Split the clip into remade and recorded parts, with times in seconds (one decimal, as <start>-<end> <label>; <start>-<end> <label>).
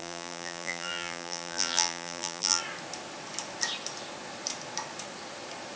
0.0-2.6 remade; 2.6-5.8 recorded